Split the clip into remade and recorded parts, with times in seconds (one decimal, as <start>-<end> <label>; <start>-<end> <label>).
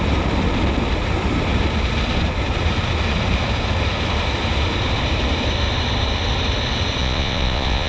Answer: 0.0-7.0 recorded; 7.0-7.9 remade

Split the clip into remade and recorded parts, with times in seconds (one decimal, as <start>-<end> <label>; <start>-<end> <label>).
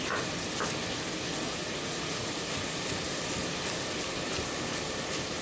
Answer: 0.0-1.6 recorded; 1.6-2.7 remade; 2.7-5.4 recorded